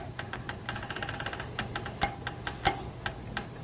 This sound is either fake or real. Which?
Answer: real